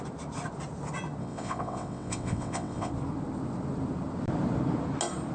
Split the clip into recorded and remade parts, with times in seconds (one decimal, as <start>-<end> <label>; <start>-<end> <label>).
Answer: 0.0-1.2 recorded; 1.2-2.9 remade; 2.9-5.3 recorded